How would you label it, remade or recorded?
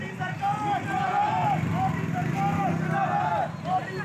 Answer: recorded